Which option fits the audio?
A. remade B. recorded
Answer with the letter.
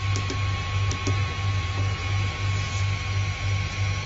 B